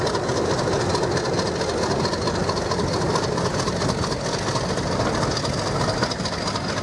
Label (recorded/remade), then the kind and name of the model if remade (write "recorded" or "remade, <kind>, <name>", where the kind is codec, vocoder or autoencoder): recorded